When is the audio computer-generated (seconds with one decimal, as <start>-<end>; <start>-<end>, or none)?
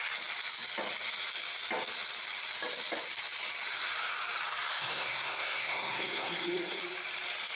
4.7-6.8